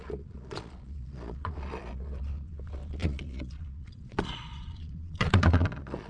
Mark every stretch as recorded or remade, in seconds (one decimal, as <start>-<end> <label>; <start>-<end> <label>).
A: 0.0-6.1 remade